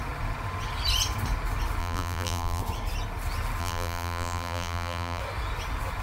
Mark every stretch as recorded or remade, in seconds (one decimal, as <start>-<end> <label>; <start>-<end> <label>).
0.0-1.8 recorded; 1.8-2.6 remade; 2.6-3.6 recorded; 3.6-5.2 remade; 5.2-6.0 recorded